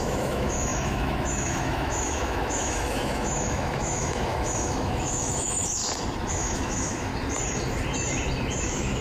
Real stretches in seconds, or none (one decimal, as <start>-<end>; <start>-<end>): 5.8-6.3; 7.1-8.6